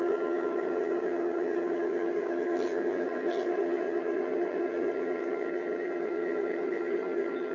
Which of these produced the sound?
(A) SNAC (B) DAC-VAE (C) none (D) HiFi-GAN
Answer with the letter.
D